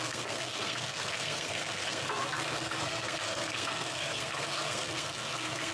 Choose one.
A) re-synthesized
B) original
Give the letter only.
A